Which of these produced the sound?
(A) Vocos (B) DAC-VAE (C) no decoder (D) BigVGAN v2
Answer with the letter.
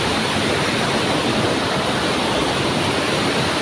D